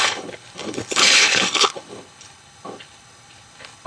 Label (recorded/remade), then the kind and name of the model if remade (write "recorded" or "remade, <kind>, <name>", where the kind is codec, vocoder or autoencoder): remade, codec, HILCodec